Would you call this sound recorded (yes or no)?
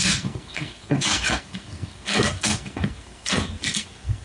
no